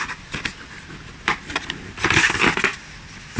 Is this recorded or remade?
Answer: recorded